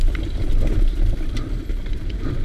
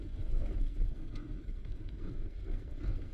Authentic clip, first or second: first